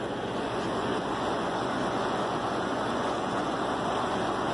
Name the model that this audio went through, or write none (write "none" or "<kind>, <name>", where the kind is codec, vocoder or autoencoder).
vocoder, Vocos